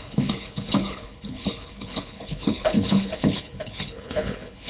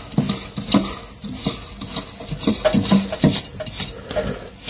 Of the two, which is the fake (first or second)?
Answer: first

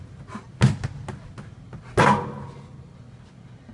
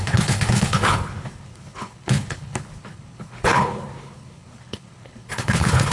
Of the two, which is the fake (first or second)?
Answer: second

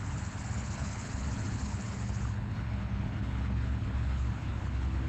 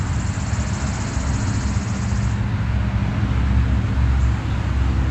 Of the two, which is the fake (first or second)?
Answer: first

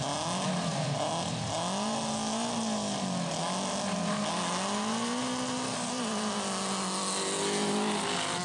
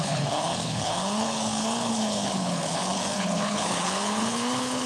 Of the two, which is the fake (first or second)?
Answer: second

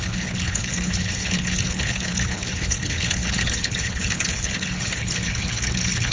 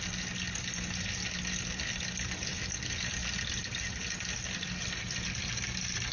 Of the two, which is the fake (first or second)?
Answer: first